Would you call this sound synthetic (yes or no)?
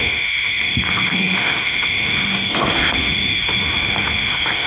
yes